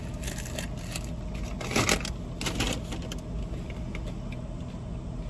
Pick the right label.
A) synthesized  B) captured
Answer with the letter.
B